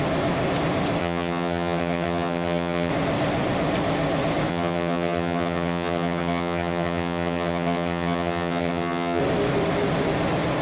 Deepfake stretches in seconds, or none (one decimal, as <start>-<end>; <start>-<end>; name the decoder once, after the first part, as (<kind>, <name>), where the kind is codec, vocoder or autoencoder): 1.0-2.9 (vocoder, HiFi-GAN); 4.5-9.2